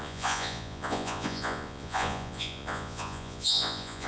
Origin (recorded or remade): remade